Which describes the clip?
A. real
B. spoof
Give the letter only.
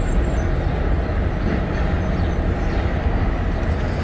A